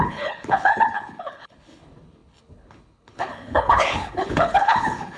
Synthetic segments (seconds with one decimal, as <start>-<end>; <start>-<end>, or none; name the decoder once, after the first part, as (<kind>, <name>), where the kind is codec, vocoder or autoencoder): 0.0-5.2 (codec, HILCodec)